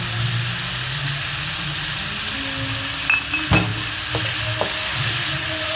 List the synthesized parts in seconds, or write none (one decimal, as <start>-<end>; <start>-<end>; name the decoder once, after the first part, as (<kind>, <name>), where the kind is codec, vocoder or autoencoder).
none